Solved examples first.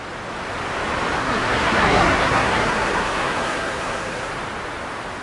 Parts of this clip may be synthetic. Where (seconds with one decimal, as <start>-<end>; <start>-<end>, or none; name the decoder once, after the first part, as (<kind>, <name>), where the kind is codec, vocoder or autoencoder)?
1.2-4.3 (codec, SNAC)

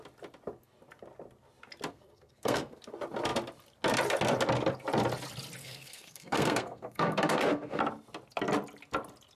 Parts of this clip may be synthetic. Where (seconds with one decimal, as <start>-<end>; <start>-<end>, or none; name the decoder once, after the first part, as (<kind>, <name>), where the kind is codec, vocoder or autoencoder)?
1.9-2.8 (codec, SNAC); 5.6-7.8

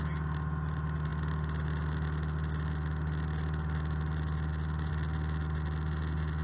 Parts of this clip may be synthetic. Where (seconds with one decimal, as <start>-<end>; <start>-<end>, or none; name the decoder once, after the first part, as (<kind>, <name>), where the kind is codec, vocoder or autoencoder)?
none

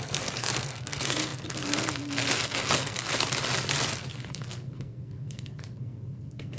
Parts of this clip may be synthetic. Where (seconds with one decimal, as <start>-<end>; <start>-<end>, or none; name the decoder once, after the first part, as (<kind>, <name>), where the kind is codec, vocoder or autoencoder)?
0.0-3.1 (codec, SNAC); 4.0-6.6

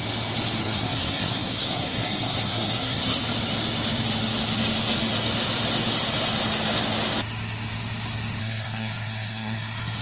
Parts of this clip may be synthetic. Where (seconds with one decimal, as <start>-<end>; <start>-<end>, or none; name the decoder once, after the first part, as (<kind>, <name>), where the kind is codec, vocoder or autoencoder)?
0.6-3.2 (codec, SNAC); 8.4-10.0

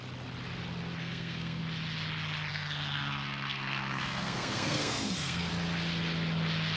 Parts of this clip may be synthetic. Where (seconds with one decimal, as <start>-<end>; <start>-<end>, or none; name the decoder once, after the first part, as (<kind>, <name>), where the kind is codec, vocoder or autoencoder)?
1.0-1.6 (codec, SNAC); 2.5-5.5

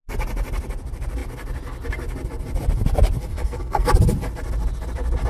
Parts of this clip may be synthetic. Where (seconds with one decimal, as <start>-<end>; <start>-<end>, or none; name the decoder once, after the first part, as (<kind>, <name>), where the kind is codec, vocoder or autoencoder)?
3.3-3.9 (codec, SNAC)